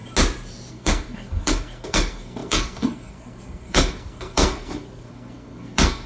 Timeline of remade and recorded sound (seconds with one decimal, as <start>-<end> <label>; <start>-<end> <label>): 0.0-0.7 recorded; 0.7-6.1 remade